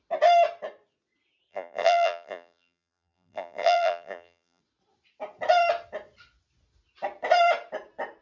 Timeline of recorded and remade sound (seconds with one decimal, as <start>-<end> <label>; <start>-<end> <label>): 0.0-1.5 recorded; 1.5-4.6 remade; 4.6-8.2 recorded